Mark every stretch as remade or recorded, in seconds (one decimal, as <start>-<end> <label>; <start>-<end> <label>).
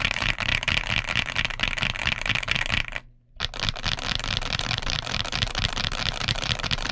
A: 0.0-0.5 remade; 0.5-4.6 recorded; 4.6-6.9 remade